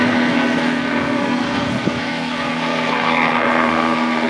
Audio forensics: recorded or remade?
remade